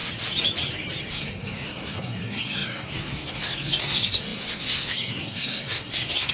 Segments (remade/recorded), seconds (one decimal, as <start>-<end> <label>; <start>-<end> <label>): 0.0-1.1 recorded; 1.1-6.3 remade